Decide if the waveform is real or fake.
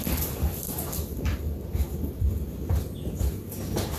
real